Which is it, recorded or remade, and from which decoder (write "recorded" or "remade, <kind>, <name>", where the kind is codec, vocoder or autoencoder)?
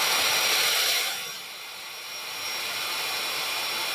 recorded